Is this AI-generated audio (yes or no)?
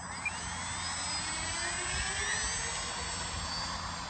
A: no